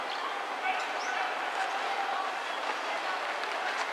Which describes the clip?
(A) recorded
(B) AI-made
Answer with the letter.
A